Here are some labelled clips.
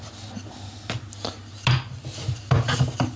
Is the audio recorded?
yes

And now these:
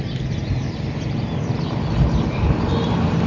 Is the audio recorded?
yes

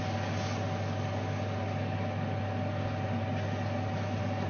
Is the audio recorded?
yes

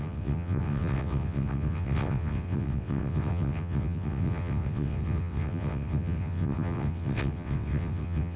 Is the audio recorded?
no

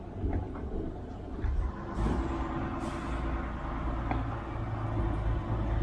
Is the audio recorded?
yes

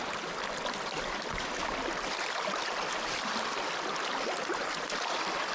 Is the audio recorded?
yes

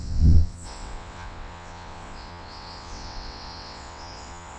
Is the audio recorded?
no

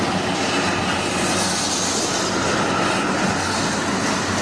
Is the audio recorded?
yes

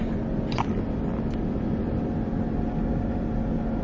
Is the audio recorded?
yes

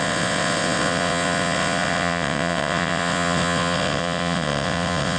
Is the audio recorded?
no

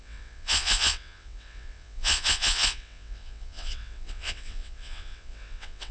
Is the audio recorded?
no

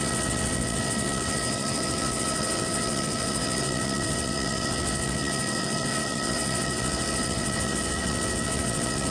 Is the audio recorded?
no